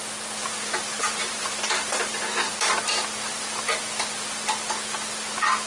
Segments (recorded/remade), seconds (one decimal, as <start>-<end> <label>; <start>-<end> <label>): 0.0-0.4 recorded; 0.4-2.1 remade; 2.1-3.3 recorded; 3.3-3.8 remade; 3.8-5.7 recorded